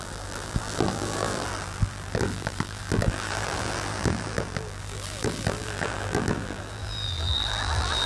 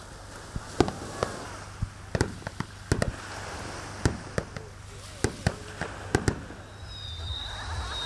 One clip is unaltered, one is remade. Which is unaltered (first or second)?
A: second